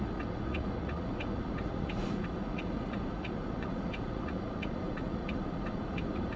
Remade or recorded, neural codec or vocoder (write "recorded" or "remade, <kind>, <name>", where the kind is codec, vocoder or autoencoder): remade, vocoder, Vocos